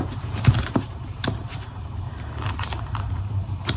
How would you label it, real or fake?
fake